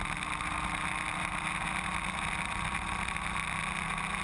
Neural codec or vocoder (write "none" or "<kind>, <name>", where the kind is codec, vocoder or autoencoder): none